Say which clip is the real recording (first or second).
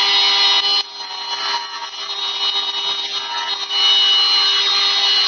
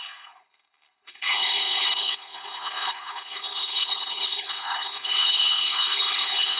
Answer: first